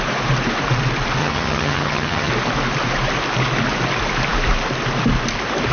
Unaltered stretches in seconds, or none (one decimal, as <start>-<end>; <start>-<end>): 0.0-1.2; 2.3-5.7